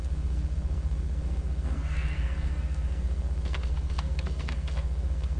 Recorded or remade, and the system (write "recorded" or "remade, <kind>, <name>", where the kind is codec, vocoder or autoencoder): remade, codec, SNAC